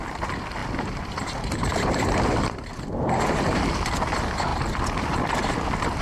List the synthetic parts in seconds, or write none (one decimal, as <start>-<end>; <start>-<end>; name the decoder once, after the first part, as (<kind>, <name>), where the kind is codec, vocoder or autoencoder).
0.6-3.7 (vocoder, BigVGAN v2)